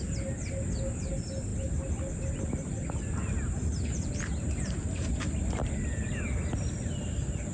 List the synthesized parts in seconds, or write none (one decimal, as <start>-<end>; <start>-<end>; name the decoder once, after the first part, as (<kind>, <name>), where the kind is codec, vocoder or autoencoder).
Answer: none